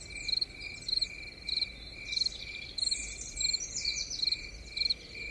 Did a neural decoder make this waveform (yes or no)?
no